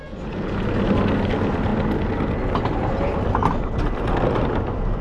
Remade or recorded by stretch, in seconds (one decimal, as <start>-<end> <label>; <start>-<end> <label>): 0.0-5.0 recorded